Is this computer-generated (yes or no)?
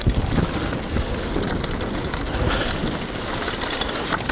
no